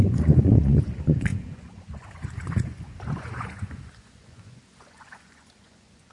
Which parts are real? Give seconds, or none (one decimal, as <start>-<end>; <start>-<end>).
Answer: none